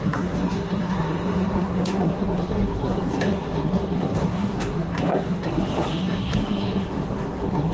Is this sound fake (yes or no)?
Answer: yes